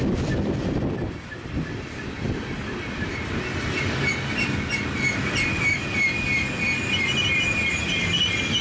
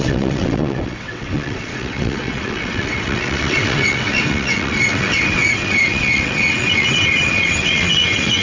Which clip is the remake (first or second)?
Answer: second